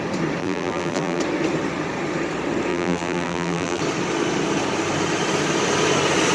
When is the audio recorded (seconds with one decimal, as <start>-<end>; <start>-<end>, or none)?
0.0-0.4; 1.2-2.7; 3.8-6.3